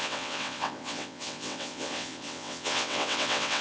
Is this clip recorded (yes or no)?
no